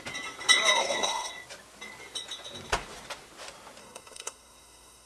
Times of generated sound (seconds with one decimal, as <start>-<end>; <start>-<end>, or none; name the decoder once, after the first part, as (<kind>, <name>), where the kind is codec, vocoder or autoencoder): 0.8-1.3 (codec, SNAC); 3.8-5.1